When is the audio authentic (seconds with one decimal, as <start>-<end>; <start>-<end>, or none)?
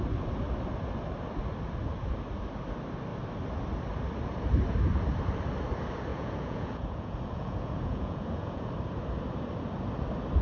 0.0-6.1; 8.7-10.4